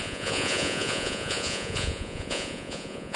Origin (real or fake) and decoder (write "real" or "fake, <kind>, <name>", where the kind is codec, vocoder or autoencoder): fake, vocoder, Vocos